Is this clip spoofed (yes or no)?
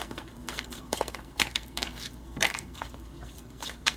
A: yes